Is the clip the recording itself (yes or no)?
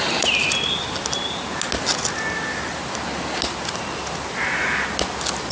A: yes